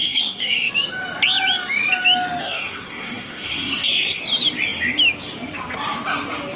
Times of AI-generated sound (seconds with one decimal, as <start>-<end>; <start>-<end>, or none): 0.0-0.7; 2.4-4.2